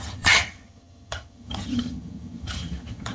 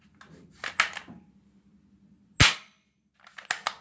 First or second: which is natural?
second